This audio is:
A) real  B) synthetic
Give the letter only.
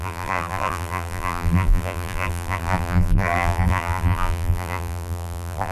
B